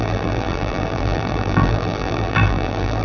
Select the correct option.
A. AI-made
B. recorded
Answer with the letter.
A